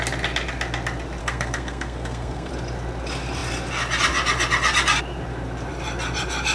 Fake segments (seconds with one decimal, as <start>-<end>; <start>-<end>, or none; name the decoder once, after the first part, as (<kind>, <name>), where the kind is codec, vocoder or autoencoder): 1.2-2.5 (codec, SNAC)